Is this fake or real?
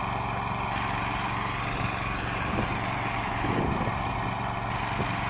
real